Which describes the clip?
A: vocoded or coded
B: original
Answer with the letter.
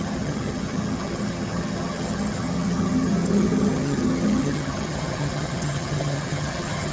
A